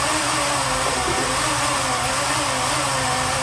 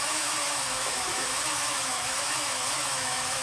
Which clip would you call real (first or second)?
first